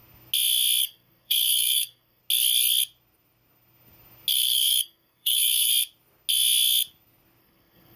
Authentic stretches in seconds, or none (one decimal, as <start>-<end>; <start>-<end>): 0.0-0.8; 2.2-4.3; 5.7-7.4